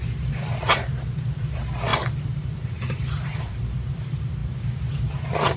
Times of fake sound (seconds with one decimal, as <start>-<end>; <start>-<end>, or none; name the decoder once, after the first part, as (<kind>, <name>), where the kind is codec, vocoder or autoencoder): 0.0-5.6 (vocoder, BigVGAN v2)